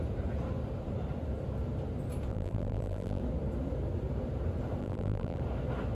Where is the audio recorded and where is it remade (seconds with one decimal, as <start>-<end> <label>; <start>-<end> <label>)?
0.0-2.3 recorded; 2.3-3.2 remade; 3.2-4.8 recorded; 4.8-5.4 remade; 5.4-5.9 recorded